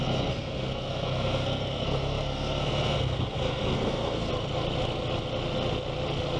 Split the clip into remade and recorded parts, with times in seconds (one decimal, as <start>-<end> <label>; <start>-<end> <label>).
0.0-4.3 remade; 4.3-6.4 recorded